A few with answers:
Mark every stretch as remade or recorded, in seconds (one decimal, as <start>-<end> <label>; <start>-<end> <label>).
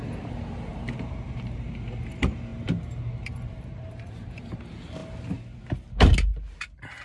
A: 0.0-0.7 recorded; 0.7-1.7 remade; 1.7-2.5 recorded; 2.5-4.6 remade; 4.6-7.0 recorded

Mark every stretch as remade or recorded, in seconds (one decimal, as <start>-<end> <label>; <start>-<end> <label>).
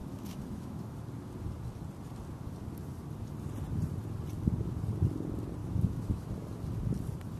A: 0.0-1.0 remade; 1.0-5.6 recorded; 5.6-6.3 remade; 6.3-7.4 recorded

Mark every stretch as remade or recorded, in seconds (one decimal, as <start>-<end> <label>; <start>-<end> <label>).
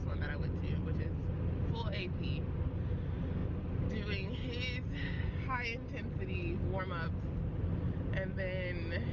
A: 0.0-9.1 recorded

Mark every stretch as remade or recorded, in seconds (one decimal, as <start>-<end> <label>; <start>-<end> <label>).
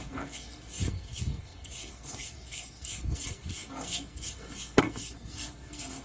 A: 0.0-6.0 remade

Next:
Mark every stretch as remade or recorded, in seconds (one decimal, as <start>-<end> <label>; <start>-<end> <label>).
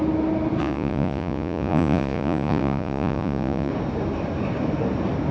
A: 0.0-0.6 recorded; 0.6-3.7 remade; 3.7-5.3 recorded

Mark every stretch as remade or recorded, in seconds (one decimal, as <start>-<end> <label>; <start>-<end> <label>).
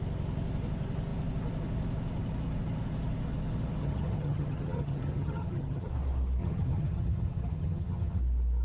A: 0.0-3.8 recorded; 3.8-5.9 remade; 5.9-6.4 recorded; 6.4-8.2 remade; 8.2-8.6 recorded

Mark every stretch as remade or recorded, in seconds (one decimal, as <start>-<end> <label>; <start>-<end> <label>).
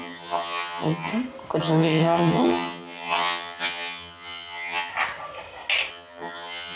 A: 0.0-1.1 remade; 1.1-1.6 recorded; 1.6-4.9 remade; 4.9-5.9 recorded; 5.9-6.8 remade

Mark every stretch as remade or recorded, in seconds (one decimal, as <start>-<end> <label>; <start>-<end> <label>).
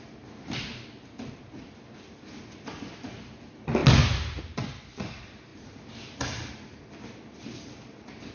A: 0.0-8.3 recorded